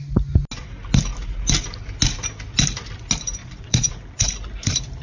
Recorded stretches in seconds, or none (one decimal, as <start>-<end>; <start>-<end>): 0.0-3.4; 4.0-5.0